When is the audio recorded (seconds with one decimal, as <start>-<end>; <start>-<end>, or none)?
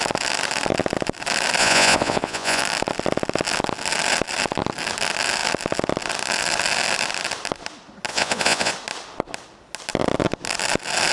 0.0-1.6; 2.6-8.1; 8.7-11.1